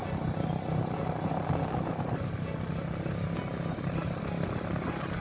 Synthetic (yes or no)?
no